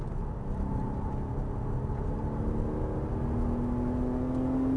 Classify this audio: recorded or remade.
recorded